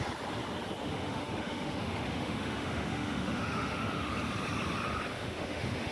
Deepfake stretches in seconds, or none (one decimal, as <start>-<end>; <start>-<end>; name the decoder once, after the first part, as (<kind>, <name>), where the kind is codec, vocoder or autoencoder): 0.9-4.1 (autoencoder, DAC-VAE); 5.1-5.9

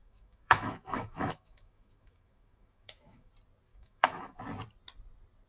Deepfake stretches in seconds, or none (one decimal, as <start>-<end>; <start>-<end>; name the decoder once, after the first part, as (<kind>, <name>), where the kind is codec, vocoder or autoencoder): 0.0-3.3 (autoencoder, DAC-VAE); 3.7-4.4

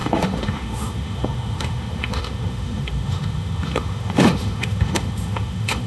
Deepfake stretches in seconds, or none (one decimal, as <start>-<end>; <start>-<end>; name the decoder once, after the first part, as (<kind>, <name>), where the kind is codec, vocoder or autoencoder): 0.0-5.9 (autoencoder, DAC-VAE)

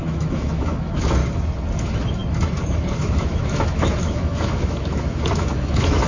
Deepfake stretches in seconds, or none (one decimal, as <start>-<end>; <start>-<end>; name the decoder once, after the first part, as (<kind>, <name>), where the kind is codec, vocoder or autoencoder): 0.0-1.2 (autoencoder, DAC-VAE); 1.7-6.1

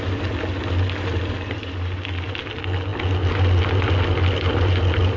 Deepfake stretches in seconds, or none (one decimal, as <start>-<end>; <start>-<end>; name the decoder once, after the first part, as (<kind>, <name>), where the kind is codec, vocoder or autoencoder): none

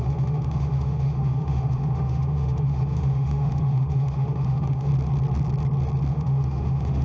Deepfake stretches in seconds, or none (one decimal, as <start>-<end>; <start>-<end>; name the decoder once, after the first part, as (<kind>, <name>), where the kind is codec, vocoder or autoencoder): 0.0-4.9 (autoencoder, DAC-VAE); 6.1-7.0

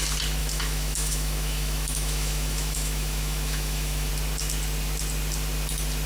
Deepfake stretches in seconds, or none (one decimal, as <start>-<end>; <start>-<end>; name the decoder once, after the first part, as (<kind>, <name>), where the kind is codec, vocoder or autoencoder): 0.4-4.1 (autoencoder, DAC-VAE)